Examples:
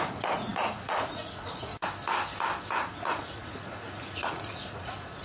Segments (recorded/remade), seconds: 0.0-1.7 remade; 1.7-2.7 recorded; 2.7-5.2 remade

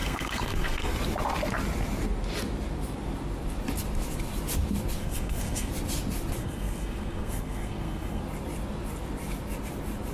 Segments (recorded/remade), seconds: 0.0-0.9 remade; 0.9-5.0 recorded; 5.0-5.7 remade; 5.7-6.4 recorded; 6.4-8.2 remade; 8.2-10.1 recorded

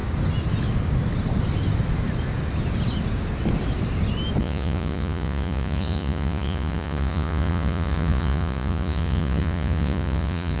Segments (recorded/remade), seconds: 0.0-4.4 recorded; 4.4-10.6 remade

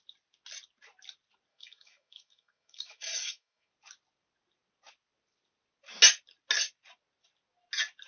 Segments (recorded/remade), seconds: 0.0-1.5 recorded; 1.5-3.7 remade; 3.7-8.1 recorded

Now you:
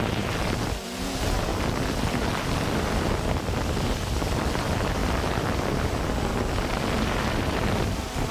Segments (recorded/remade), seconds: 0.0-1.5 remade; 1.5-2.1 recorded; 2.1-8.3 remade

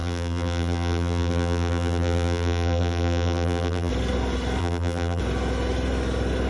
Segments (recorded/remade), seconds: 0.0-3.9 remade; 3.9-4.6 recorded; 4.6-5.2 remade; 5.2-6.5 recorded